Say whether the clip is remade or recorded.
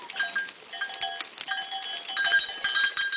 recorded